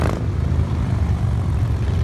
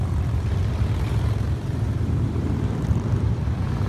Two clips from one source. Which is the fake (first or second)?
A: second